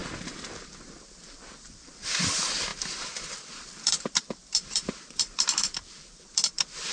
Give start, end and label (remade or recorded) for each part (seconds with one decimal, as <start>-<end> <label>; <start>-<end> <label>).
0.0-0.7 recorded; 0.7-6.9 remade